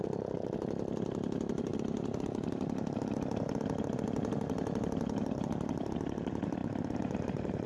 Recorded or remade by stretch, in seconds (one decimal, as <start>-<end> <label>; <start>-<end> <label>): 0.0-7.7 recorded